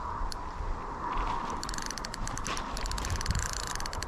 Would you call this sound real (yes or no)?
no